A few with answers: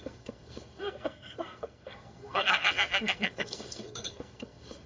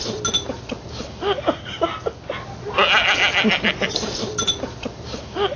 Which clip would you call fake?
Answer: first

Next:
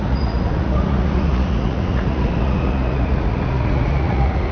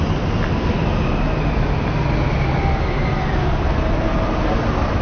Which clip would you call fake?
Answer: first